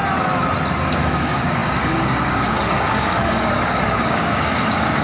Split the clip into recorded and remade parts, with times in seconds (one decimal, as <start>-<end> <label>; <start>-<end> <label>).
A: 0.0-0.8 recorded; 0.8-5.0 remade